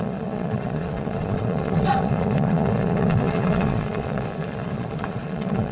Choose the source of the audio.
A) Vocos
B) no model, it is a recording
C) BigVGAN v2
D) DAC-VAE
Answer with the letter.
A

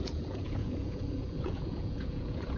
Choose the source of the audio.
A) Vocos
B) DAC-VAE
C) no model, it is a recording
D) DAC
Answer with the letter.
A